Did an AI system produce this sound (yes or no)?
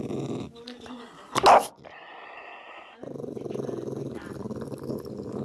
no